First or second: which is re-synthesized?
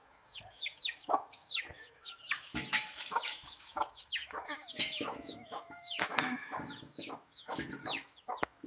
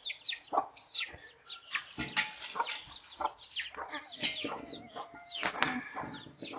first